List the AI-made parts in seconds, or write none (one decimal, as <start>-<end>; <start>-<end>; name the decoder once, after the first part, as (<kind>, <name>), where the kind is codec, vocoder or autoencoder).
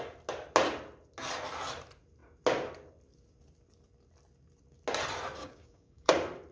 5.4-6.1 (codec, DAC)